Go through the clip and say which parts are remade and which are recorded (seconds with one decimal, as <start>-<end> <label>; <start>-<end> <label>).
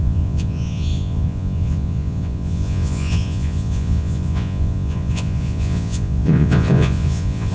0.0-7.5 remade